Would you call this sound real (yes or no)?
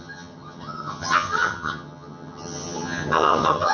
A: no